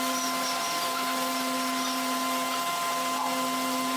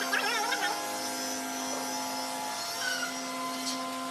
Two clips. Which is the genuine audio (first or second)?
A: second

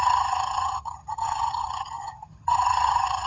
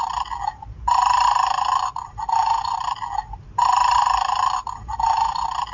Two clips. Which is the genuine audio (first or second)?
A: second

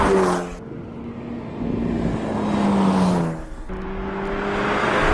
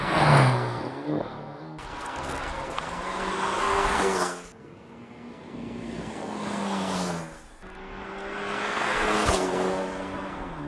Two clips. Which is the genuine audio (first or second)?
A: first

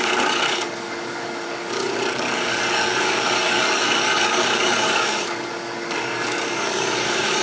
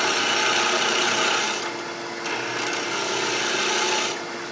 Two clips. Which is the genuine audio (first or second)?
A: second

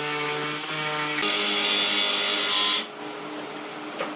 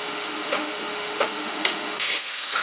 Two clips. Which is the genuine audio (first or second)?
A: first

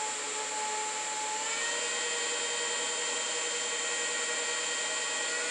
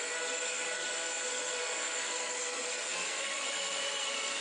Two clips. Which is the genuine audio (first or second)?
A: first